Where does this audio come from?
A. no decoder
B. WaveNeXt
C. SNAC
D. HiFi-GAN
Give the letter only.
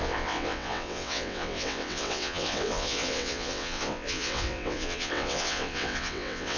B